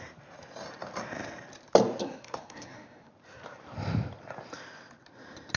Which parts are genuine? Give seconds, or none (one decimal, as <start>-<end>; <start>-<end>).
0.0-2.0; 3.1-5.6